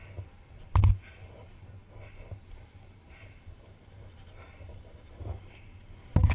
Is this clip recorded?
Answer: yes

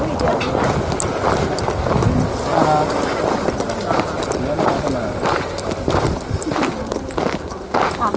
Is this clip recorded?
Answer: yes